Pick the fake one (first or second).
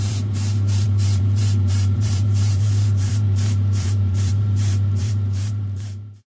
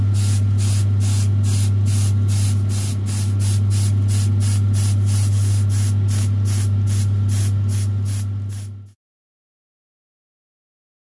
first